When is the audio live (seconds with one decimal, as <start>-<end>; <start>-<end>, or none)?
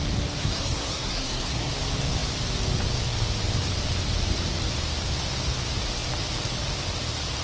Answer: 0.0-0.4; 1.7-7.4